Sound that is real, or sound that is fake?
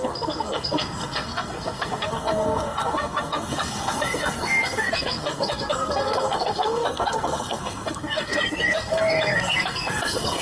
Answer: fake